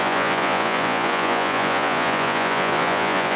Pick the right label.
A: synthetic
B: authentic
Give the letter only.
A